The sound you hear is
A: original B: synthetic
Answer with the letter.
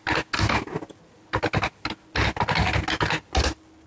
A